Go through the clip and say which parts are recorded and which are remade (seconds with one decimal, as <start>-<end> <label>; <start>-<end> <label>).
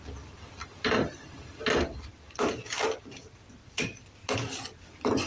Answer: 0.0-2.1 remade; 2.1-3.6 recorded; 3.6-4.2 remade; 4.2-4.8 recorded; 4.8-5.3 remade